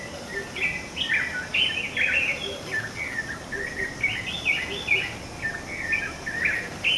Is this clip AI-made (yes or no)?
no